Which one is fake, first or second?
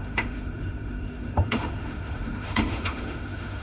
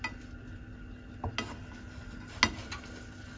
first